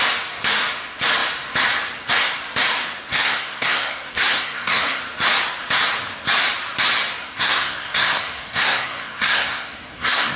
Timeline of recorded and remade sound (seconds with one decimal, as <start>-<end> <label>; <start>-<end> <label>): 0.0-3.1 recorded; 3.1-5.0 remade; 5.0-7.2 recorded; 7.2-10.4 remade